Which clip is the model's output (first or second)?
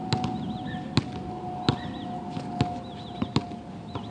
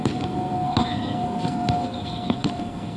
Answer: second